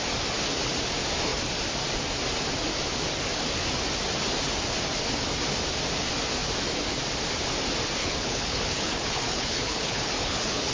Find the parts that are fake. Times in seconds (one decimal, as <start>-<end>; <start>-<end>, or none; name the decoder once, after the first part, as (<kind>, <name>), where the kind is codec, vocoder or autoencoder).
8.0-10.7 (codec, HILCodec)

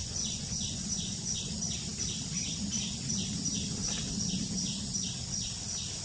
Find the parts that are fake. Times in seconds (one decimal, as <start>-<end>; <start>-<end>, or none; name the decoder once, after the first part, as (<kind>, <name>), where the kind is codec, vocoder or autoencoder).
0.0-1.5 (vocoder, Vocos)

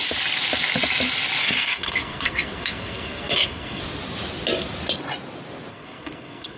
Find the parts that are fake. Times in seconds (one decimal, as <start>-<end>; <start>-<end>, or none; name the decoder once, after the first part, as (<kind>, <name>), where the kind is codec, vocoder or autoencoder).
1.4-3.8 (codec, SNAC); 5.7-6.6

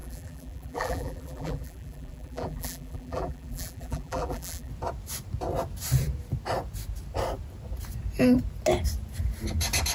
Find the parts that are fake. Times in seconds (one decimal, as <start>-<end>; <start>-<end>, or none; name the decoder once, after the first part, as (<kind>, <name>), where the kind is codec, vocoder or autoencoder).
0.0-4.7 (vocoder, BigVGAN v2)

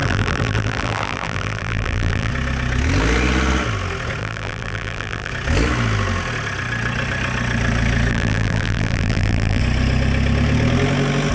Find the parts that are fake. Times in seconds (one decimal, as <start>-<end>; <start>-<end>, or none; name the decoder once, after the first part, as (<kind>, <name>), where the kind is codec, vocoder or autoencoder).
0.0-2.3 (vocoder, BigVGAN v2); 4.2-5.3; 8.1-9.6

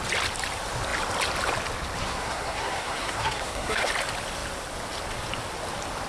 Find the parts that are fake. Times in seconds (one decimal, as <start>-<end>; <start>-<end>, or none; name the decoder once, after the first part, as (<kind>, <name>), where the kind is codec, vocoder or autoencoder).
2.0-3.9 (codec, SNAC)

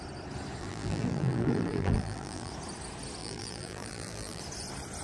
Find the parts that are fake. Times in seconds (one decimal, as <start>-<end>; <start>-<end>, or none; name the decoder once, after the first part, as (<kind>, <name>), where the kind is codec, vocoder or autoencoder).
0.6-2.5 (vocoder, BigVGAN v2); 3.2-4.4

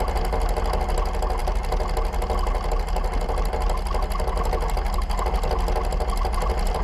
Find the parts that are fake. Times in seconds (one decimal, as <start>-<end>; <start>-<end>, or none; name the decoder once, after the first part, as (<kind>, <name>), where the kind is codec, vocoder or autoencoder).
none